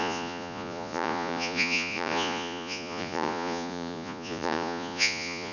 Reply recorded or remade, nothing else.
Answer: remade